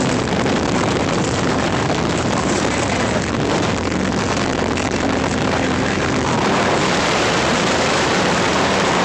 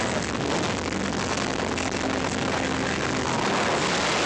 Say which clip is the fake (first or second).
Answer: first